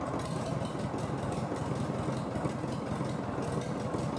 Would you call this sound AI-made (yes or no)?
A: no